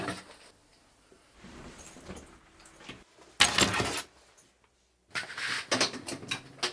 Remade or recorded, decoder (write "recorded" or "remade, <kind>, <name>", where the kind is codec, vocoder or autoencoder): recorded